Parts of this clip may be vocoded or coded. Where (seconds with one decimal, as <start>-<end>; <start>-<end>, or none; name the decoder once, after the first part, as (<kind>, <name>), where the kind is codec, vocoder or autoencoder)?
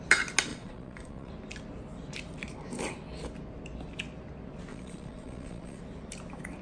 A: 0.5-1.3 (vocoder, Vocos); 4.7-5.8